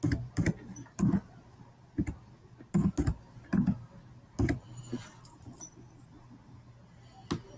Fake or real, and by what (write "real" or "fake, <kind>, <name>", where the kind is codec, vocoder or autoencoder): real